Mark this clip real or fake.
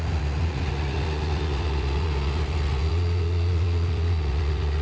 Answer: fake